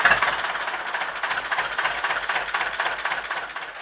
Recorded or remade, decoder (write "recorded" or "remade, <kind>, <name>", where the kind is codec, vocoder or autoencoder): recorded